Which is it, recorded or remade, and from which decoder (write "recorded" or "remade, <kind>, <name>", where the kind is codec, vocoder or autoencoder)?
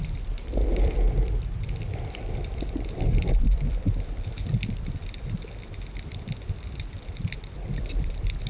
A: remade, vocoder, BigVGAN v2